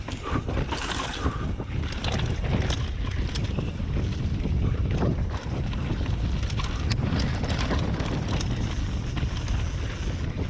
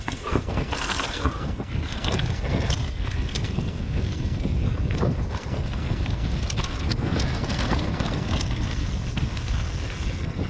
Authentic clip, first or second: first